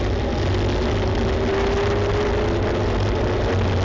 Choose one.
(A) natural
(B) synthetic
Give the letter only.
A